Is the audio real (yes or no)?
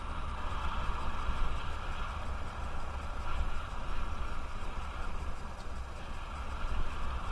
yes